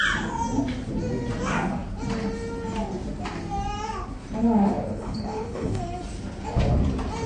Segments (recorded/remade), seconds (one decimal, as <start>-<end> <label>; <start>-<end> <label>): 0.0-4.9 recorded; 4.9-5.8 remade; 5.8-7.3 recorded